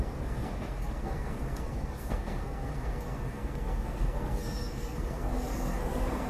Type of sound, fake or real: fake